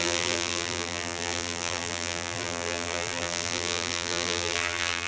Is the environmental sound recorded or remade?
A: remade